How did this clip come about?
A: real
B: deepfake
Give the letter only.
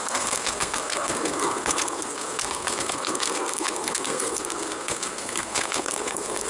B